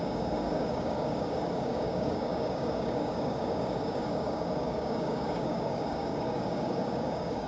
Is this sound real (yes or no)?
no